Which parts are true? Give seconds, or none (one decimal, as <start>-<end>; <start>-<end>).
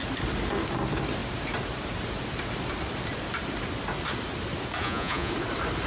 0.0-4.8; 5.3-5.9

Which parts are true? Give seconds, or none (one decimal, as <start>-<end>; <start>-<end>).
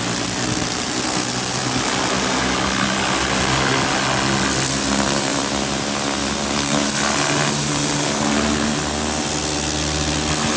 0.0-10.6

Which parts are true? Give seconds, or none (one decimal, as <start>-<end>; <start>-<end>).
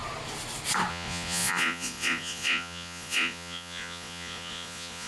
0.0-0.9